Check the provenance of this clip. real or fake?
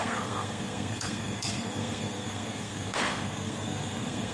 fake